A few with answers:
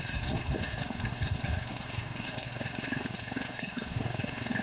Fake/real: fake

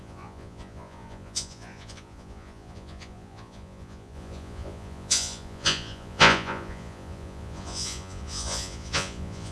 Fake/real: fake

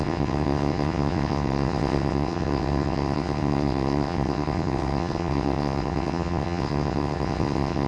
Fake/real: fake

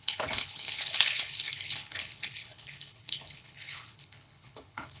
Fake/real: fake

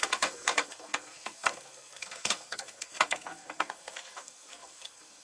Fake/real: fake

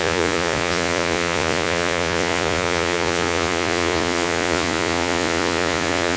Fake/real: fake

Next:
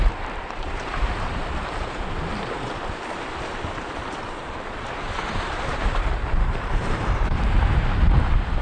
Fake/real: fake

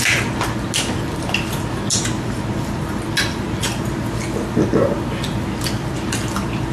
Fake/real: real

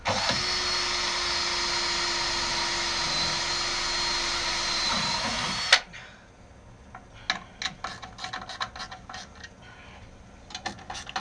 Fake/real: real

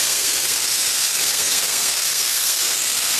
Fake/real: fake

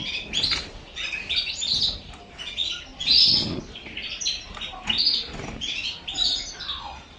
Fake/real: real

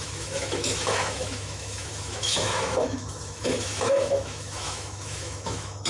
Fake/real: fake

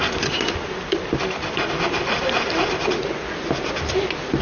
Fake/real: real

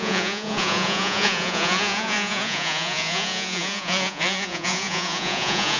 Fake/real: fake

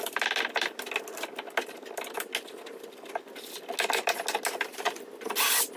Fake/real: real